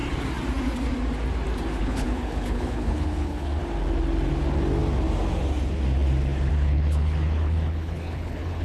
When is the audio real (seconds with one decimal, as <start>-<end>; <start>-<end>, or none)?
0.0-1.8; 3.6-6.5